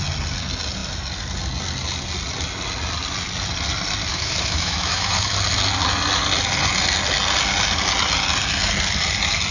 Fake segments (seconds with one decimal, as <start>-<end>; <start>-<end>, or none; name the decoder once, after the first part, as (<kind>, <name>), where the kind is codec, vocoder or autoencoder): 4.1-5.3 (autoencoder, DAC-VAE)